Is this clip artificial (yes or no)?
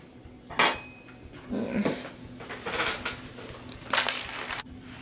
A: no